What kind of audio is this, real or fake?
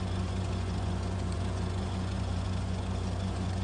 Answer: fake